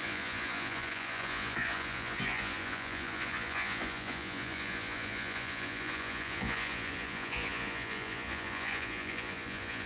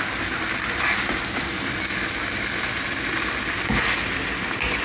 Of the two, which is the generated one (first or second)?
first